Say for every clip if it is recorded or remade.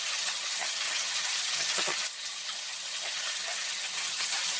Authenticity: remade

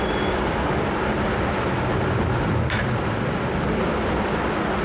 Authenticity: recorded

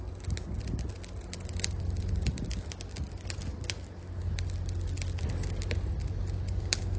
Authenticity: recorded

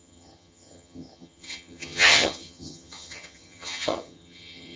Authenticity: remade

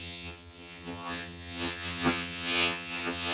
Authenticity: remade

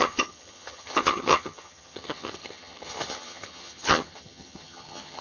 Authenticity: remade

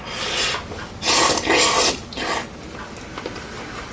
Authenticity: recorded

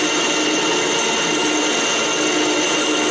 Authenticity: recorded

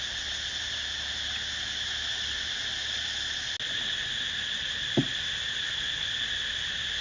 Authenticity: recorded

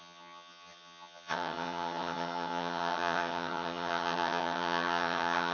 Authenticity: remade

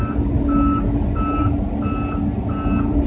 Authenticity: recorded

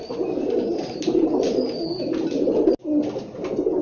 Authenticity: recorded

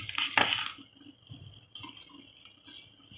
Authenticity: recorded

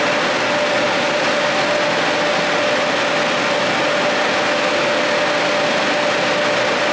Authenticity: recorded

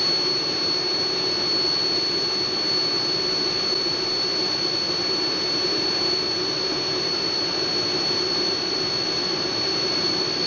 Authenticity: recorded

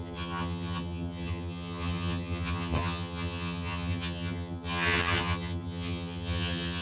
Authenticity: remade